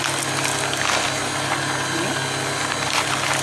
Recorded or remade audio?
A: recorded